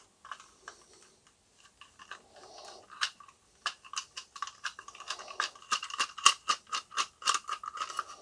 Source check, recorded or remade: recorded